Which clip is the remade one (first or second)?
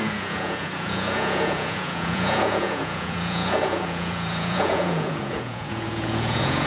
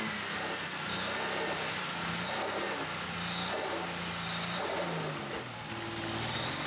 first